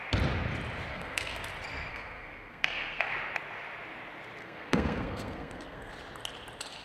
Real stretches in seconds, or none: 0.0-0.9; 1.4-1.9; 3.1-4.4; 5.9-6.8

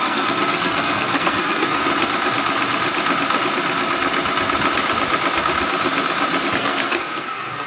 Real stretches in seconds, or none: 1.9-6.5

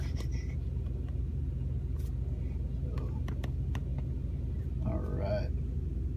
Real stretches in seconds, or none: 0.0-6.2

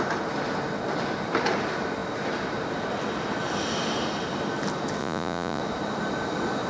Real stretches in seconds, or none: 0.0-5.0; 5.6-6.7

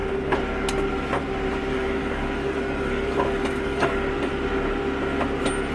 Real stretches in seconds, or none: 0.0-1.7; 4.1-5.7

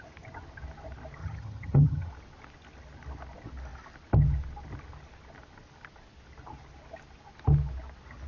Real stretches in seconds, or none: 0.0-1.2; 2.1-8.3